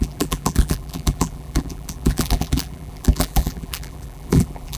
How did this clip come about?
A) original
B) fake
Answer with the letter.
B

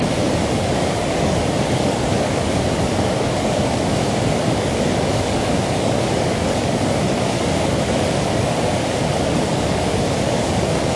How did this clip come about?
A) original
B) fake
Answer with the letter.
B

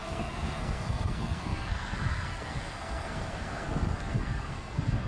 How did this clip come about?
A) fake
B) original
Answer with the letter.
A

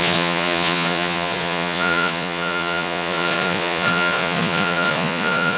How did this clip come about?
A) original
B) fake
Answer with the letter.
B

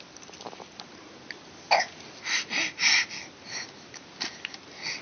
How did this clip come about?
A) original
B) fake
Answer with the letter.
A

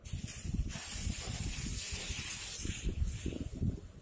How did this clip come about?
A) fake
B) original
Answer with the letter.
B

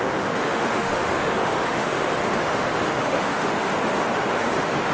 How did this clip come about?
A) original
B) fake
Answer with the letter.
B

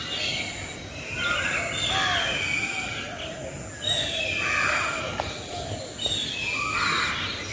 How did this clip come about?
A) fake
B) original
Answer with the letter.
B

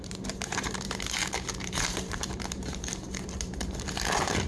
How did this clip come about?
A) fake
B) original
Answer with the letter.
A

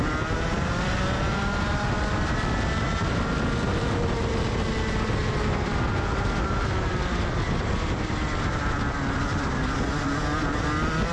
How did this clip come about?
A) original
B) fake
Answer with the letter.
A